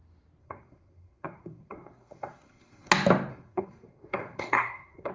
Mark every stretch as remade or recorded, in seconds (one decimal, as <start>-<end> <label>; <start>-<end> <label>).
0.0-0.4 recorded; 0.4-2.9 remade; 2.9-3.3 recorded; 3.3-5.1 remade